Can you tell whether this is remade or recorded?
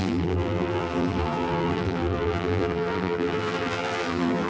remade